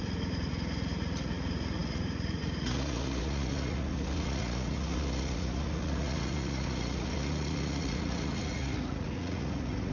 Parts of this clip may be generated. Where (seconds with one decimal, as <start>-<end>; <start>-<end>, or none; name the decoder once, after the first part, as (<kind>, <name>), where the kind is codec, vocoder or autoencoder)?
0.0-9.9 (vocoder, Vocos)